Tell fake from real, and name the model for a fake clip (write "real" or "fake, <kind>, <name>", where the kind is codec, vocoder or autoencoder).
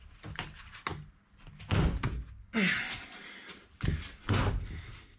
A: real